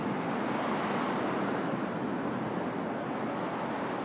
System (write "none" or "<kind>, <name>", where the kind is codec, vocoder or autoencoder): none